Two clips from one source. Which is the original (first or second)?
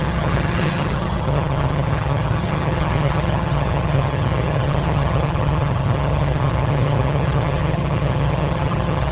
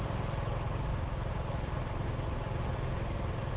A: second